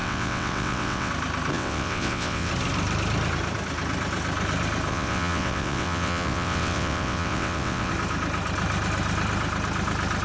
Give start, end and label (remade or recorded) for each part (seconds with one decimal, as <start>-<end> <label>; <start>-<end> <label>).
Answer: 0.0-1.1 remade; 1.1-1.5 recorded; 1.5-2.5 remade; 2.5-4.9 recorded; 4.9-7.9 remade; 7.9-10.2 recorded